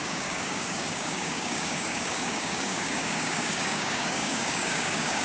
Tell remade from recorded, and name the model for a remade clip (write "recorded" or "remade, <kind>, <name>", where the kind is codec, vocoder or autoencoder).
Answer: remade, codec, DAC